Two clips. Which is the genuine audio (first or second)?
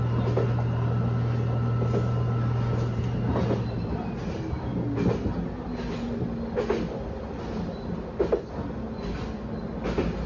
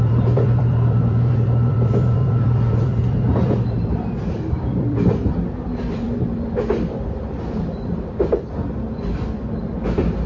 first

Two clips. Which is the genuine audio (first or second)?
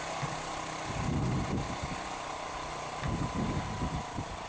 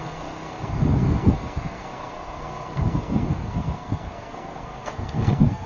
first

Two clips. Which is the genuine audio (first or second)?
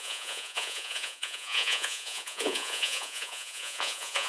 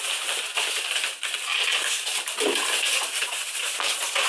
second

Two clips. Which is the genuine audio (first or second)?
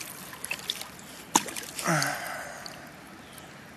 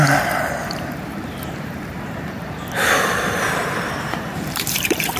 first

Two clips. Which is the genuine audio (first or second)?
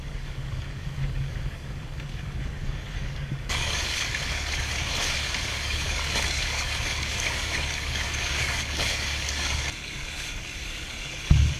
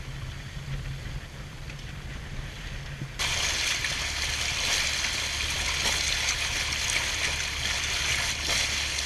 second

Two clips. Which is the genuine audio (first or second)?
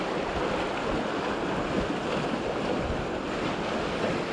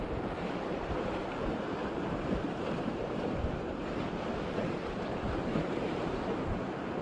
first